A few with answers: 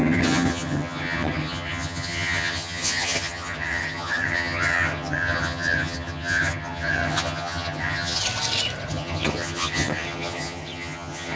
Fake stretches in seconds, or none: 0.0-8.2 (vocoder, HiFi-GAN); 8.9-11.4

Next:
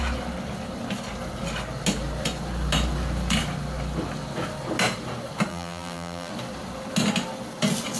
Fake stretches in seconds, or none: 5.5-6.3 (vocoder, BigVGAN v2)